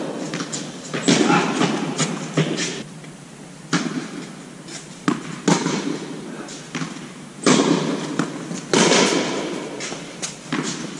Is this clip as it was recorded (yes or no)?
yes